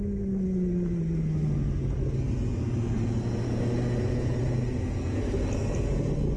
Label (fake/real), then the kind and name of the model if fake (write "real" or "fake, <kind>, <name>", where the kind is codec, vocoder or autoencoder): real